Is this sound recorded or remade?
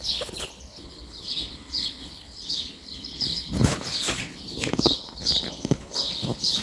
remade